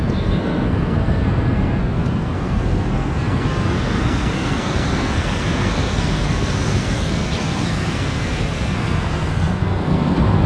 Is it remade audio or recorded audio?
remade